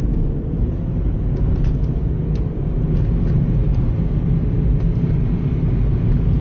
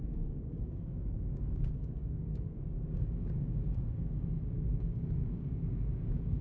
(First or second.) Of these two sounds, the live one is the first